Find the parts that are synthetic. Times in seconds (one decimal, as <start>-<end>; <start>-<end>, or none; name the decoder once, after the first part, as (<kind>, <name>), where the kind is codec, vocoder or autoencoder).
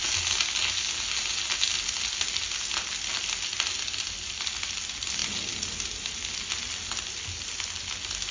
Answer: none